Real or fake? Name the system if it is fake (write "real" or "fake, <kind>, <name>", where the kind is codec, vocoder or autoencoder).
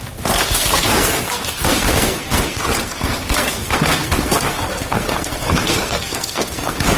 fake, codec, SNAC